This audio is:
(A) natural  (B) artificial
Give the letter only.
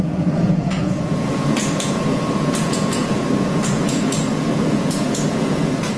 B